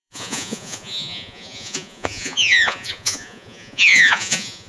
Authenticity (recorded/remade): remade